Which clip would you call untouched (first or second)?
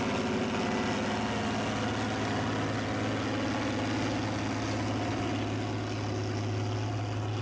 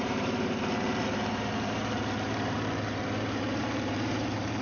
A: first